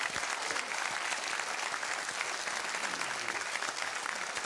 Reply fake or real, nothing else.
real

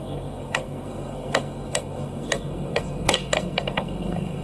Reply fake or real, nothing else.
fake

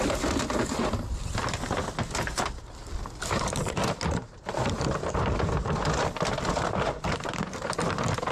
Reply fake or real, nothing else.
real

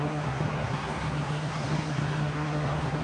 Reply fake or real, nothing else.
fake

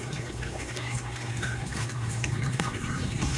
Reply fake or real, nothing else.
fake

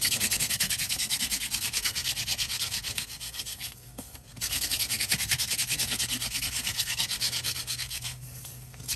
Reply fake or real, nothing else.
fake